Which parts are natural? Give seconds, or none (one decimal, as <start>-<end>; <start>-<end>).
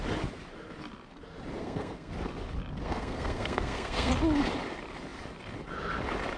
0.0-1.6; 2.1-2.8; 4.1-6.4